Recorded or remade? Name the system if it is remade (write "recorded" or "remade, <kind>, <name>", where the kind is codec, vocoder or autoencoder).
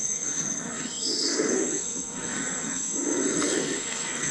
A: remade, codec, SNAC